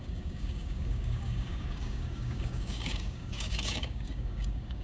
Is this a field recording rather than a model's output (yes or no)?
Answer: no